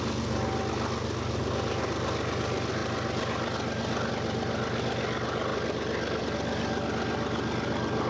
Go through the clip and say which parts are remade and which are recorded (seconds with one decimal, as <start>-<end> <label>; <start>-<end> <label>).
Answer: 0.0-8.1 recorded